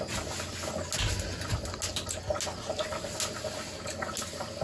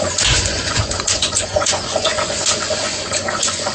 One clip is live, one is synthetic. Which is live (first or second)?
first